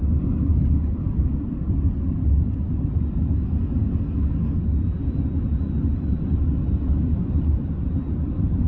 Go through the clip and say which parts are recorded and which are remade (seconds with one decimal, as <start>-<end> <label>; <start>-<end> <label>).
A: 0.0-8.7 recorded